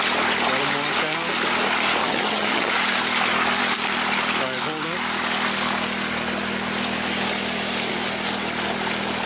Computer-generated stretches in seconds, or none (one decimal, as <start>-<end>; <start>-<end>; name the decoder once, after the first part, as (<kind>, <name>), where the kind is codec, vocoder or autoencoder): 2.0-2.7 (vocoder, HiFi-GAN)